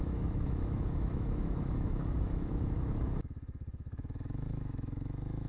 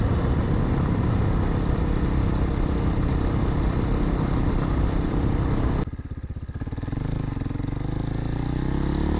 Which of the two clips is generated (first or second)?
first